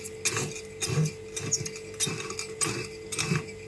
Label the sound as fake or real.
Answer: real